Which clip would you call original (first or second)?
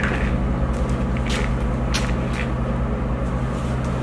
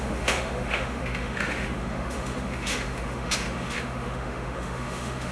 first